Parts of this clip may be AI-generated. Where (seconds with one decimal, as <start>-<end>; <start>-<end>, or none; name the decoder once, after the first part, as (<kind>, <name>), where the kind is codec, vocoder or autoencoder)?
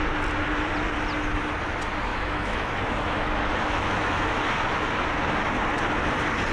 2.1-4.4 (autoencoder, DAC-VAE)